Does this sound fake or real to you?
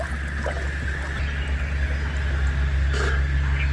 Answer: real